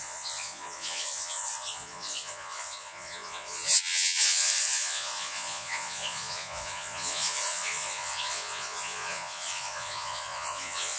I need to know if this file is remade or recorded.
remade